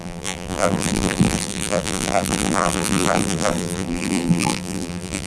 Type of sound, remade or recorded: remade